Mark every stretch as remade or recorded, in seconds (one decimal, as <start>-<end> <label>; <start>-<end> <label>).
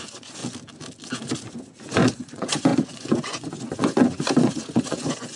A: 0.0-0.4 remade; 0.4-1.4 recorded; 1.4-5.4 remade